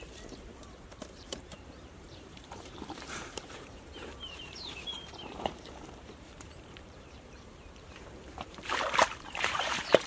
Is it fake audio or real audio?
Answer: fake